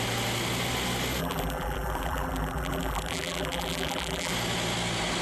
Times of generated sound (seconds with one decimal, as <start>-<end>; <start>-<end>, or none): 1.2-4.3